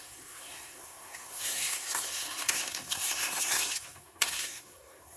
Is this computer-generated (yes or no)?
yes